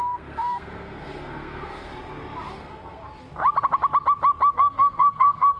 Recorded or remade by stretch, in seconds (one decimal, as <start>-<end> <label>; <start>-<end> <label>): 0.0-1.9 remade; 1.9-2.6 recorded; 2.6-3.0 remade; 3.0-4.5 recorded; 4.5-5.6 remade